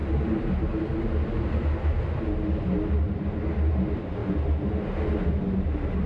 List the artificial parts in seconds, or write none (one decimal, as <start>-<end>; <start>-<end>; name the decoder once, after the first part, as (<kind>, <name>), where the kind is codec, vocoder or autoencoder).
none